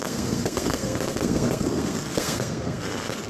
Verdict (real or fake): fake